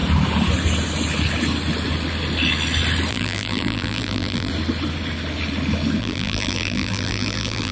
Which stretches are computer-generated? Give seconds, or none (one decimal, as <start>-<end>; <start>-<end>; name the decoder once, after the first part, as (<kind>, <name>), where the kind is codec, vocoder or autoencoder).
3.1-4.5 (vocoder, BigVGAN v2); 6.0-7.7